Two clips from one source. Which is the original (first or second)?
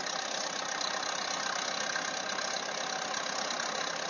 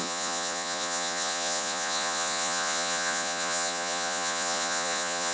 first